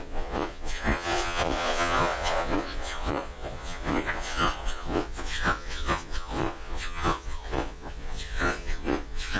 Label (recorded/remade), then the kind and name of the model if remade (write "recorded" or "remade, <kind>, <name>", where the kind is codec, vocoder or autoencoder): remade, vocoder, Vocos